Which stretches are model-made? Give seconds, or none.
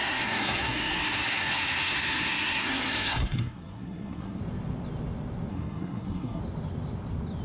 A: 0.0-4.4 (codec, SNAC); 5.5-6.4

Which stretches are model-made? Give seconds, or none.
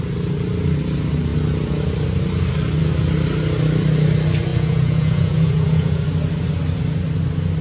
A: 4.5-6.0 (vocoder, Vocos)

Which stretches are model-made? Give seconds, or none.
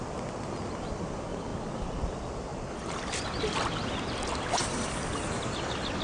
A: none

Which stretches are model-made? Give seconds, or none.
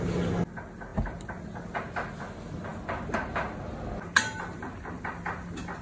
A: none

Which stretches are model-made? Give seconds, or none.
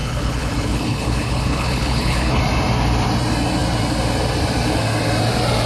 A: 0.0-2.4 (codec, HILCodec)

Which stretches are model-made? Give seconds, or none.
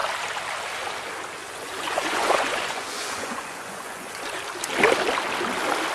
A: 1.4-4.4 (vocoder, Vocos)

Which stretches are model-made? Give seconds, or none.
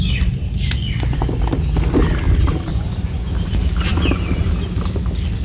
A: 0.8-1.4 (vocoder, Vocos); 2.7-3.3